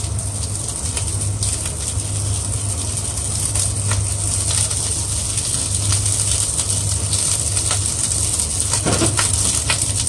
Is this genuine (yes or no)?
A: yes